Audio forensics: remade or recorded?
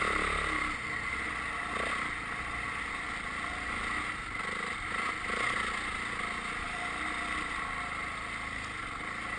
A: recorded